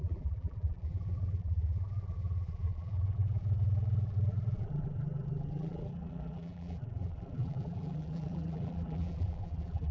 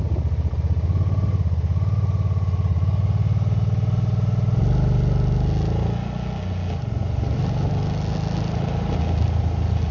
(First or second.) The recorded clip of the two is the second